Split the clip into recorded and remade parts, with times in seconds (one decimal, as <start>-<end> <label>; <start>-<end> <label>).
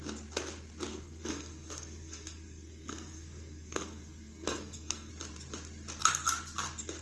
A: 0.0-0.9 recorded; 0.9-5.1 remade; 5.1-7.0 recorded